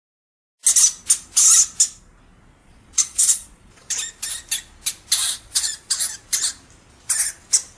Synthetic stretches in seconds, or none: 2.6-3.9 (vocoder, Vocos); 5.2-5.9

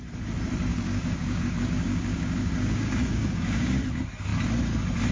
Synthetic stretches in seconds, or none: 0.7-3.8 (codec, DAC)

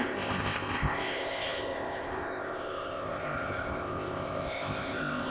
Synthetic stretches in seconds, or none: 0.0-5.3 (codec, ZipCodec)